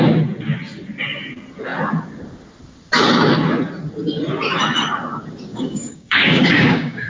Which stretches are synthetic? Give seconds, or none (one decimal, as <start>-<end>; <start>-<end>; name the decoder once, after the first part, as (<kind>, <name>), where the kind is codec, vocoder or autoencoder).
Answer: 5.5-7.1 (codec, DAC)